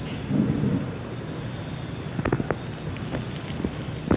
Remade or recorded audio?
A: recorded